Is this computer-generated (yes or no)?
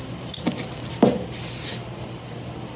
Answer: no